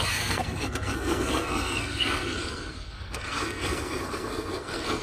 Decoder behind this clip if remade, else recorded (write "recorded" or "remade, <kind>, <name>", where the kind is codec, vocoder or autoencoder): remade, codec, SNAC